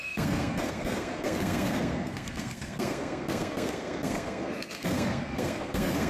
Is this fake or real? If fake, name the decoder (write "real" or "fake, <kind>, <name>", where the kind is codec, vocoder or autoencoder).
fake, codec, SNAC